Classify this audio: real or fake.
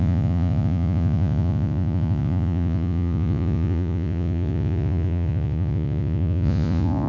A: fake